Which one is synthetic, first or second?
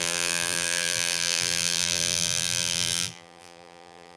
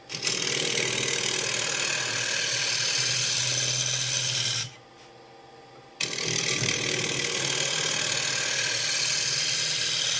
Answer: first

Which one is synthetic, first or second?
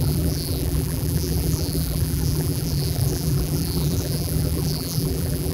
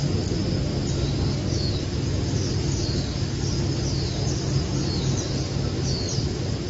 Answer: first